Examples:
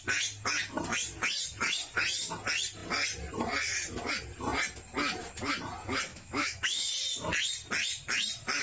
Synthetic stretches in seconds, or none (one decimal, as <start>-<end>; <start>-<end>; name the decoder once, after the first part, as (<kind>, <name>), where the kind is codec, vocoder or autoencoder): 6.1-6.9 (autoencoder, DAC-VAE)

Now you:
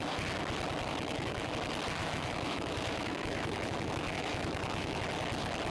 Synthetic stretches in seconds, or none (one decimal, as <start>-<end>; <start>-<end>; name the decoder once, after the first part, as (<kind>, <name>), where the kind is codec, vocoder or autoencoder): 0.9-1.5 (autoencoder, DAC-VAE); 2.0-5.0

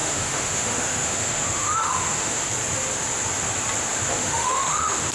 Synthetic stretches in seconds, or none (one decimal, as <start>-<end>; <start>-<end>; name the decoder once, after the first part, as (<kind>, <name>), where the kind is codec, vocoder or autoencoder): 0.0-2.5 (autoencoder, DAC-VAE); 4.2-5.1

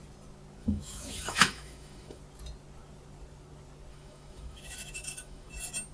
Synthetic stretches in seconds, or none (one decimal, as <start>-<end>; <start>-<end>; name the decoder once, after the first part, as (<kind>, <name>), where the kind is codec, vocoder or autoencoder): 0.6-2.2 (autoencoder, DAC-VAE); 3.9-5.5